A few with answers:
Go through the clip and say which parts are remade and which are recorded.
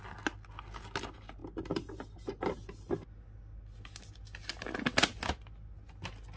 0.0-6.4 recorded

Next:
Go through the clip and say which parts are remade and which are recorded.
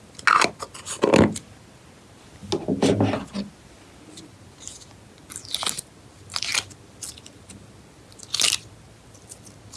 0.0-9.8 recorded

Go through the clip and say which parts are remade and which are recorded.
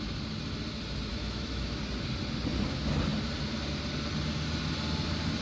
0.0-1.1 recorded; 1.1-1.8 remade; 1.8-5.4 recorded